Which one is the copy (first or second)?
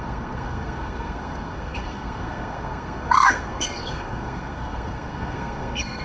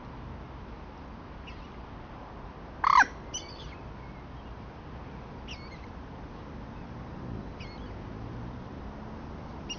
first